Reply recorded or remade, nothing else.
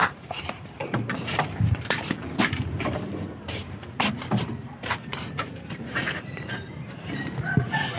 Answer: remade